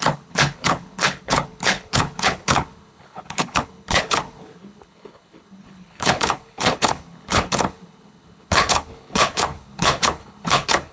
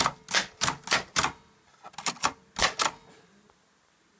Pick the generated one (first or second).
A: first